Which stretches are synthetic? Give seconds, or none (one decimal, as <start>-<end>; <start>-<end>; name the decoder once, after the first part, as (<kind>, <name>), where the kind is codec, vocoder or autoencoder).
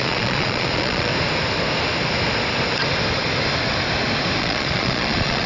0.0-1.1 (vocoder, Vocos); 4.4-5.5